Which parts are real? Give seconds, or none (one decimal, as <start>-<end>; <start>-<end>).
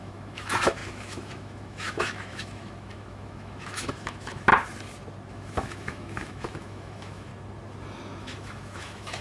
4.5-5.3; 7.3-8.2